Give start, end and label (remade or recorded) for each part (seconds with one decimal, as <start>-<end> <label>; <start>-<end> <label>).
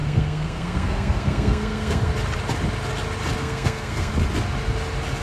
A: 0.0-2.1 remade; 2.1-3.4 recorded; 3.4-4.1 remade; 4.1-5.2 recorded